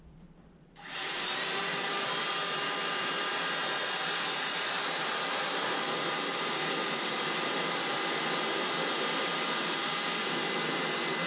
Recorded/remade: remade